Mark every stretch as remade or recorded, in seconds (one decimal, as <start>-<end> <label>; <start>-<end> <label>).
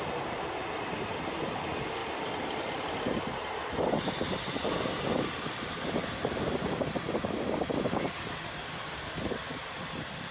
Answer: 0.0-2.0 recorded; 2.0-2.6 remade; 2.6-10.3 recorded